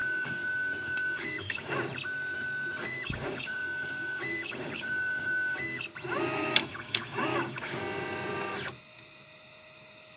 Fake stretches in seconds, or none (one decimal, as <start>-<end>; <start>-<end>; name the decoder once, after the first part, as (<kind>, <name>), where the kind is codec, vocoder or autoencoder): 0.0-1.7 (codec, DAC); 2.8-5.8; 6.7-7.8